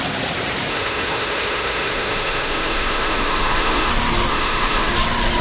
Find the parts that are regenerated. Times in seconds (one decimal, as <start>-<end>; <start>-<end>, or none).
0.7-3.9; 4.3-4.9